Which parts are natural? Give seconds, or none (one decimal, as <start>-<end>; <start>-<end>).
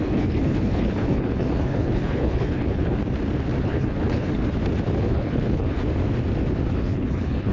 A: 3.0-3.6; 4.4-5.0; 5.8-6.7